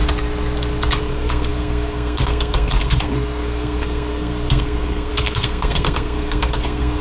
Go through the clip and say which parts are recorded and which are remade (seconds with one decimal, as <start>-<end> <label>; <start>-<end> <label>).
0.0-1.0 recorded; 1.0-7.0 remade